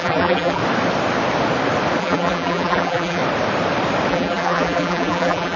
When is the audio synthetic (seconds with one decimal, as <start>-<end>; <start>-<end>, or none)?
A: 0.0-0.6; 2.0-3.2; 4.1-5.6